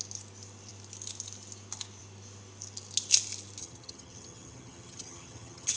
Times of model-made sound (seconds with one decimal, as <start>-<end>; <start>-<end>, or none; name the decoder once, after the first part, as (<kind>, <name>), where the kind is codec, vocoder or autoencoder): 3.6-5.8 (vocoder, HiFi-GAN)